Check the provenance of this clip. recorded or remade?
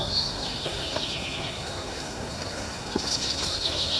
remade